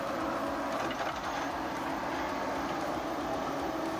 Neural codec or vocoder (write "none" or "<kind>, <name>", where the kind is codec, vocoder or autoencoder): none